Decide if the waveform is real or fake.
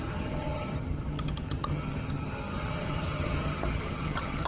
fake